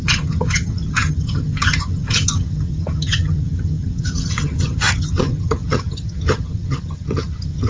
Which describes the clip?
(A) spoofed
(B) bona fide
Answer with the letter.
A